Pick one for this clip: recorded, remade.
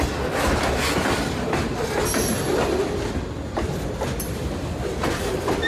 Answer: recorded